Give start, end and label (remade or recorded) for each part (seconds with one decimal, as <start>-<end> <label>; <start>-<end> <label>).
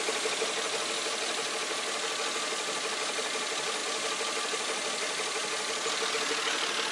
0.0-6.9 recorded